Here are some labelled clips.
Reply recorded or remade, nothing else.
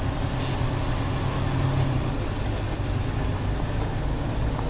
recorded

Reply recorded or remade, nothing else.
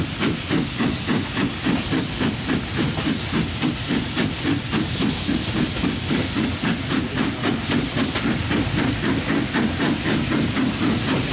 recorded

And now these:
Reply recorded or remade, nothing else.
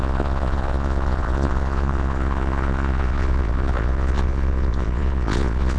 remade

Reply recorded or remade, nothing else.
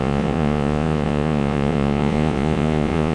remade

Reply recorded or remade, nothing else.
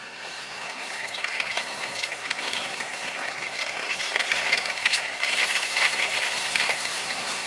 remade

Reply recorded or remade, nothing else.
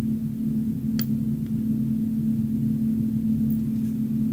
recorded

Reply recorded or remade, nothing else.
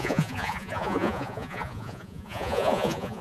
remade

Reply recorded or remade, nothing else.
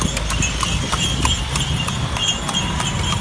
recorded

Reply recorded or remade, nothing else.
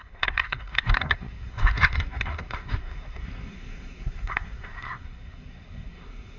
remade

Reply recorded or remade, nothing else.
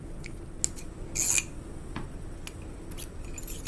recorded